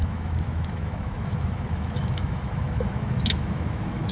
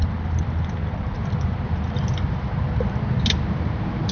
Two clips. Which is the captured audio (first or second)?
second